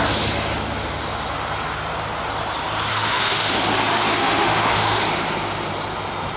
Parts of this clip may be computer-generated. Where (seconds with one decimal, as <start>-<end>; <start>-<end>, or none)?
2.9-3.5; 4.2-5.0